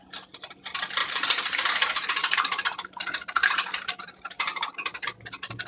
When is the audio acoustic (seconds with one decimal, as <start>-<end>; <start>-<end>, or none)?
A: 0.0-1.0; 1.7-2.2; 5.1-5.7